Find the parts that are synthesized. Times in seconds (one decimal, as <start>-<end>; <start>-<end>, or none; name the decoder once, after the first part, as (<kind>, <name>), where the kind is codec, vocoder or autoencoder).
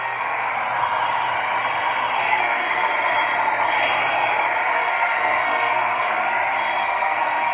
0.0-0.5 (codec, SNAC); 2.2-2.9; 4.7-6.2; 6.8-7.5